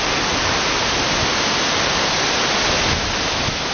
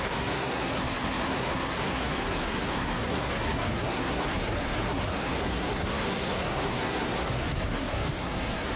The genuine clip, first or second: first